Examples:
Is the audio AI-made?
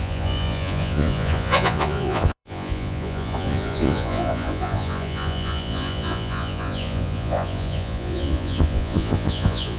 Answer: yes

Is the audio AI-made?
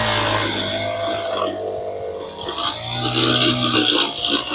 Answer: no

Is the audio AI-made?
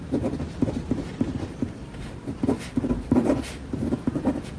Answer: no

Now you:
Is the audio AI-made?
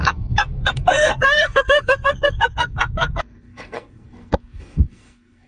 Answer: yes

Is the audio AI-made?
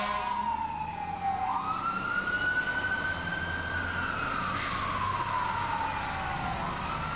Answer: no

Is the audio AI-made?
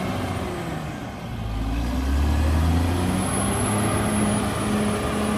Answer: no